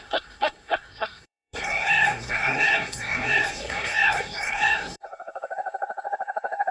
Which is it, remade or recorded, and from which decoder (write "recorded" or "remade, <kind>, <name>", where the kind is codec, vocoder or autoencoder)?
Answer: remade, codec, SNAC